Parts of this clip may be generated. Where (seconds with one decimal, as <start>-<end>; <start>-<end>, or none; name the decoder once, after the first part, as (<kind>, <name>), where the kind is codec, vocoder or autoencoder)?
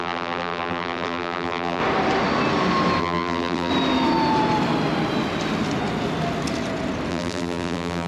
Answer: 0.0-1.8 (vocoder, BigVGAN v2); 3.0-3.7; 7.1-8.1